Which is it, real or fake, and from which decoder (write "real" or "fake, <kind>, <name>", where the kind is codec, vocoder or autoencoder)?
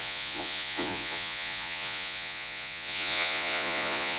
fake, vocoder, Vocos